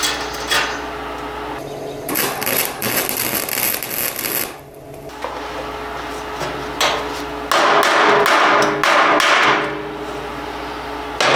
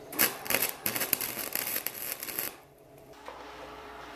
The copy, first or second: second